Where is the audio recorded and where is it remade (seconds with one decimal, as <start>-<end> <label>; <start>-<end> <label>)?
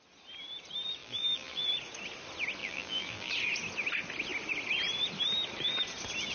0.0-1.0 recorded; 1.0-1.7 remade; 1.7-2.6 recorded; 2.6-3.3 remade; 3.3-6.3 recorded